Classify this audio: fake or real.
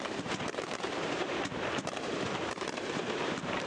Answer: fake